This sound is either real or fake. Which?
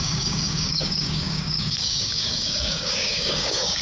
fake